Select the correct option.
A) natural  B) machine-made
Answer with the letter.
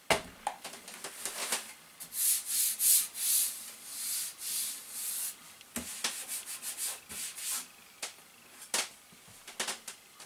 A